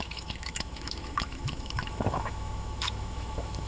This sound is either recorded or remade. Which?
remade